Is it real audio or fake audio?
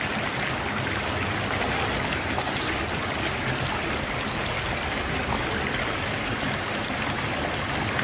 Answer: real